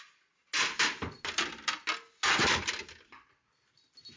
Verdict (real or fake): real